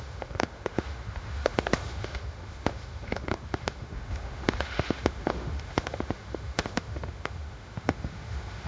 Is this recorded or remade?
remade